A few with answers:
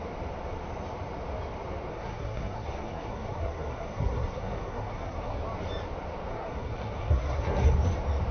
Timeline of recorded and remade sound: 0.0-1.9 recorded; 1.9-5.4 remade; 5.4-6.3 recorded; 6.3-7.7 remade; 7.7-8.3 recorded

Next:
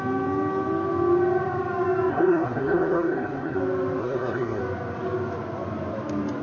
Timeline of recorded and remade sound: 0.0-2.1 recorded; 2.1-3.6 remade; 3.6-4.0 recorded; 4.0-4.6 remade; 4.6-6.4 recorded